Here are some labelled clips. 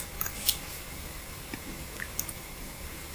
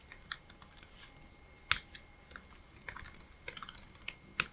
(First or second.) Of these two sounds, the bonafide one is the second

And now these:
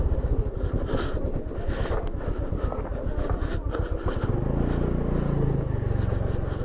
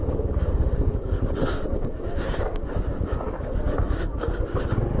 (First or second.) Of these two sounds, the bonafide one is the first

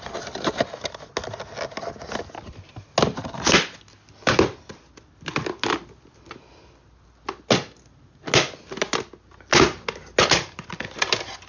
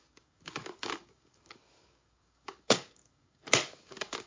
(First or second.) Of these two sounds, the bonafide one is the first